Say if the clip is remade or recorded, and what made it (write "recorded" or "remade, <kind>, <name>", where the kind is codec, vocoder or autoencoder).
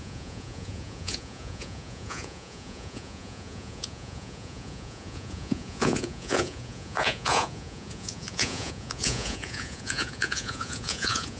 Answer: remade, vocoder, Vocos